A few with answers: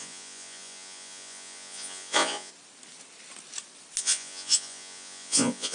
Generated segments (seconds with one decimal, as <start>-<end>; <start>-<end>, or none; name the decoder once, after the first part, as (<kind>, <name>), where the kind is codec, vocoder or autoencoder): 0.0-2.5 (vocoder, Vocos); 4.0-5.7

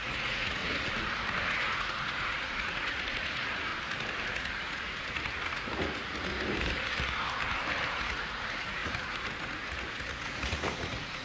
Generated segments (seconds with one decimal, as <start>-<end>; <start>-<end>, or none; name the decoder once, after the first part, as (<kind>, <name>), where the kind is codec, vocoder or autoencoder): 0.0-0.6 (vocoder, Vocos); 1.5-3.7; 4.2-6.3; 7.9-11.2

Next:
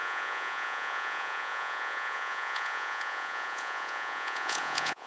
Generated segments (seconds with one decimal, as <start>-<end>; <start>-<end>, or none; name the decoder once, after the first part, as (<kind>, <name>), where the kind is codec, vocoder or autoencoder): 0.0-5.1 (vocoder, Vocos)

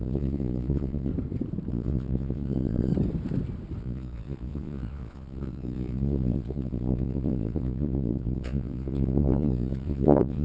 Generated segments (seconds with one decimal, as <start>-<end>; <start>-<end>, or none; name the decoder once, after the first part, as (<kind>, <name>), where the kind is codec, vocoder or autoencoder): 0.0-1.1 (vocoder, Vocos); 1.7-2.9; 3.8-10.4